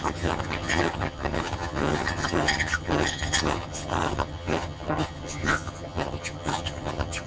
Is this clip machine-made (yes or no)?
yes